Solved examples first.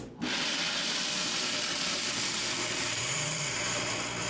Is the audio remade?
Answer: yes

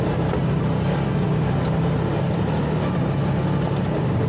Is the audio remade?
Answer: no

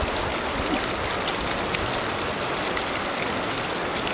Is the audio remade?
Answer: no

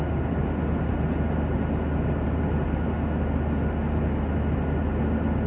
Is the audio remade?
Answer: no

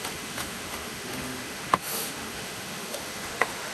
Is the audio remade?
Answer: yes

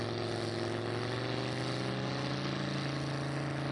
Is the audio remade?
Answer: no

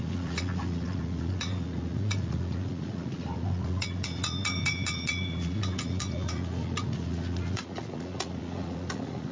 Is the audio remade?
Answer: yes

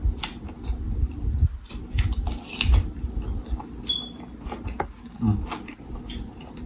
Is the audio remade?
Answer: no